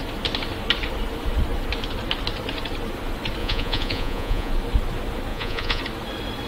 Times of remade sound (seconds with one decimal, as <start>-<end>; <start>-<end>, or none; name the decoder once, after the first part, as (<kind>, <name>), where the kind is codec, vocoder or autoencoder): 3.4-4.5 (vocoder, Vocos); 5.3-5.8